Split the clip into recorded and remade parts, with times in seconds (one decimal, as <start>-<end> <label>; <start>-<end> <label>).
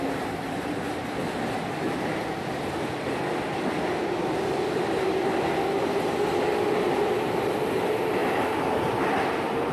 0.0-9.7 remade